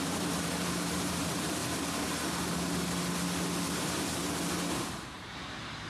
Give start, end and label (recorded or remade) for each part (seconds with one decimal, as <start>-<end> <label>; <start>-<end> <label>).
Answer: 0.0-1.6 remade; 1.6-5.1 recorded; 5.1-5.9 remade